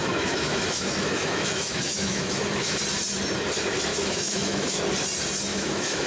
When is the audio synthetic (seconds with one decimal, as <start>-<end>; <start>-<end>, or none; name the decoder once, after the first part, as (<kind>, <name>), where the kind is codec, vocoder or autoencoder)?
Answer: 0.0-2.8 (autoencoder, DAC-VAE); 3.9-4.8; 5.5-6.1